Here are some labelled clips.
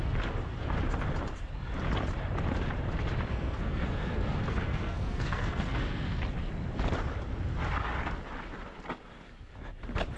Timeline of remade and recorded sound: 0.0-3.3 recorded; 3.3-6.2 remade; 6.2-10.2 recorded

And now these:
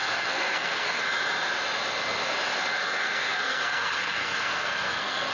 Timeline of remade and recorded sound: 0.0-1.0 remade; 1.0-2.8 recorded; 2.8-5.3 remade